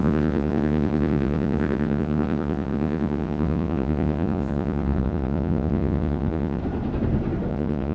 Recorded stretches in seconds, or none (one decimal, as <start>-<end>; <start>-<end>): 6.6-7.5